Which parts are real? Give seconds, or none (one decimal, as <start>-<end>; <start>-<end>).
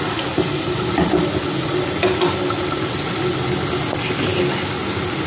0.0-5.3